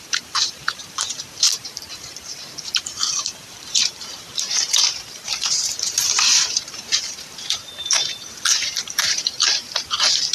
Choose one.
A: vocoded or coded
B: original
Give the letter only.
A